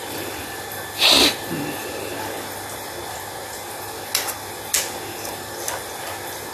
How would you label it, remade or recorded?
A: recorded